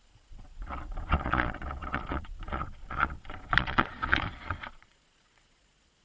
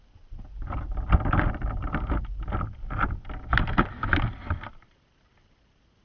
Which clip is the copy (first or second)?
first